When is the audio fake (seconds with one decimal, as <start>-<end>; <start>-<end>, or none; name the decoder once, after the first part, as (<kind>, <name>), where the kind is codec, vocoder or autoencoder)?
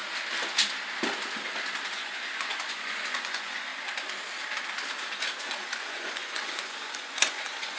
1.9-3.7 (vocoder, Vocos); 5.4-7.8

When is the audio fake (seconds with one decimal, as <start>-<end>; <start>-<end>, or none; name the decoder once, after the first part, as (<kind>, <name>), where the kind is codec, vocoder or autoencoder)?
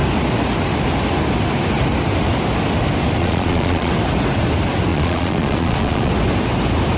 3.2-3.9 (vocoder, Vocos); 4.9-6.1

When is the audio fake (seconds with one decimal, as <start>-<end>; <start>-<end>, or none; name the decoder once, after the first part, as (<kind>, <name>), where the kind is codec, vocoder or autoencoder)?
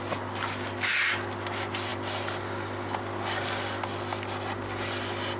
none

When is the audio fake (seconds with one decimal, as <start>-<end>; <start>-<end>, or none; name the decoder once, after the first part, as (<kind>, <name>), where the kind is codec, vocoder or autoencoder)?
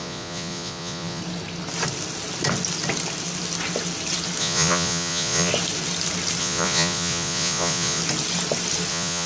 0.0-1.2 (vocoder, Vocos); 4.4-5.5; 6.4-8.0; 8.9-9.3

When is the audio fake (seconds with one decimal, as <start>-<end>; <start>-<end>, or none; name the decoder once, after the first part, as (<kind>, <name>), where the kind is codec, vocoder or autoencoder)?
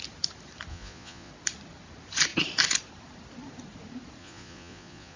0.7-1.3 (vocoder, Vocos); 4.2-5.2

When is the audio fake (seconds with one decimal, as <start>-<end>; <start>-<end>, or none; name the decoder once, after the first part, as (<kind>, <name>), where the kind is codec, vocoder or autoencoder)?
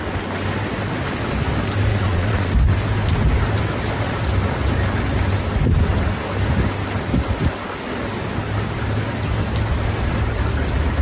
1.9-2.5 (vocoder, Vocos)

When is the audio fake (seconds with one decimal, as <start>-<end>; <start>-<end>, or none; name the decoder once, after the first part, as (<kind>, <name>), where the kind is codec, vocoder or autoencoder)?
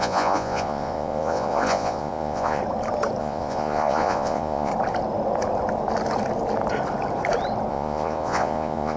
0.0-2.6 (vocoder, Vocos); 3.2-4.7; 7.7-9.0